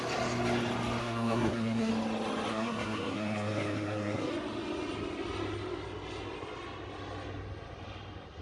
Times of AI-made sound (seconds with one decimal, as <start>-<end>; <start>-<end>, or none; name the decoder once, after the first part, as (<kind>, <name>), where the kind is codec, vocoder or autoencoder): 1.0-1.9 (codec, SNAC); 2.5-4.3